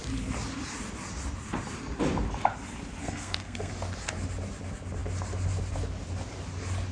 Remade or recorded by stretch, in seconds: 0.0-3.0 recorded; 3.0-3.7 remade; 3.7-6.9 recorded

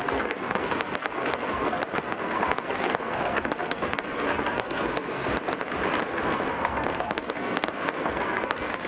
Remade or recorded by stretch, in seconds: 0.0-5.3 remade; 5.3-6.0 recorded; 6.0-8.9 remade